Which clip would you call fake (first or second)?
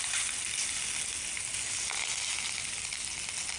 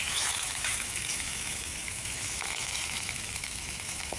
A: second